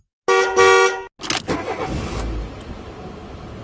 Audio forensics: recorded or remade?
recorded